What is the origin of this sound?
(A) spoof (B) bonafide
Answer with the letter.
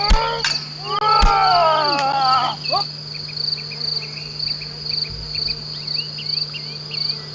B